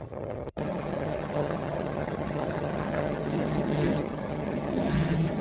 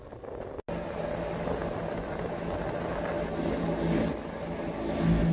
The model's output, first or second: first